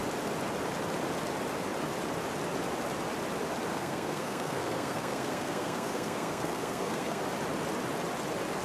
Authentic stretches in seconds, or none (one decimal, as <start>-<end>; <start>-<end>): 0.0-3.7; 7.2-8.6